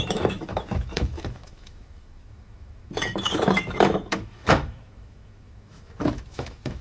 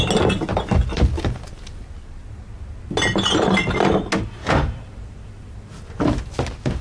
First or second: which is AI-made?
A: first